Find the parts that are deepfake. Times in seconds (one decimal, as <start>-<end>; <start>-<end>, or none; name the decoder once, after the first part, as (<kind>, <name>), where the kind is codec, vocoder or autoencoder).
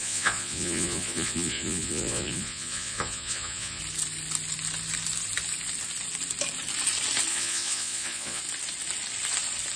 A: 0.0-3.8 (vocoder, Vocos); 7.3-8.4